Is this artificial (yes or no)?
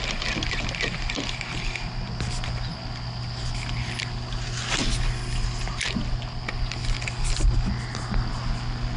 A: no